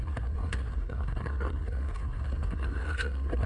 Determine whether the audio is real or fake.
fake